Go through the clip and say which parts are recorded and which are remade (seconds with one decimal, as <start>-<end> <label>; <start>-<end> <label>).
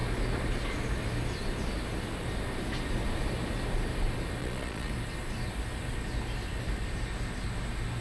0.0-4.4 recorded; 4.4-4.9 remade; 4.9-8.0 recorded